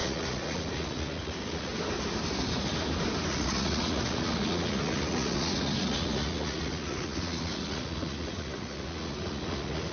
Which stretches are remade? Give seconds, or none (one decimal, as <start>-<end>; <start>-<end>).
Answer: 0.0-1.7; 3.3-9.9